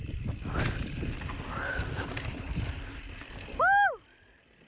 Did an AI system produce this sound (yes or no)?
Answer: no